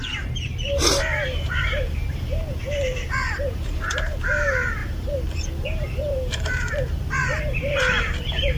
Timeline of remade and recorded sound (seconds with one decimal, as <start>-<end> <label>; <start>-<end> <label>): 0.0-8.6 remade